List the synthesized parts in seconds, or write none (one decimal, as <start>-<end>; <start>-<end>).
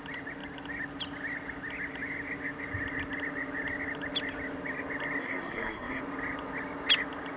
5.2-6.0